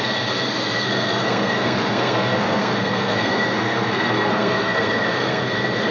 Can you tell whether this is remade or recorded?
remade